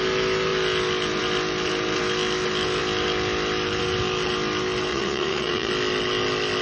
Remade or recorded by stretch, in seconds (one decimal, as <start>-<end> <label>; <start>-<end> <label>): 0.0-4.9 recorded; 4.9-5.7 remade; 5.7-6.6 recorded